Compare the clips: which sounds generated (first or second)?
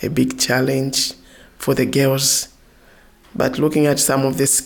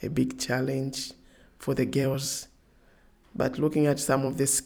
second